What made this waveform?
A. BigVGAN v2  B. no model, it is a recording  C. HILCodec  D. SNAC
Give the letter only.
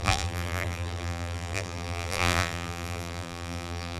A